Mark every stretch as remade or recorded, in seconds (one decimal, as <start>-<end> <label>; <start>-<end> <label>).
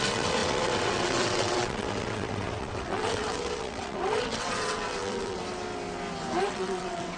0.0-5.4 remade; 5.4-6.4 recorded; 6.4-7.2 remade